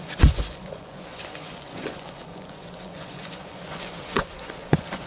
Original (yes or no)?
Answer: no